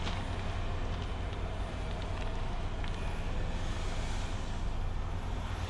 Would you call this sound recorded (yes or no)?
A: yes